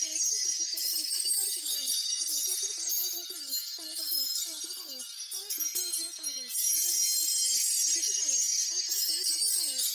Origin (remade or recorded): remade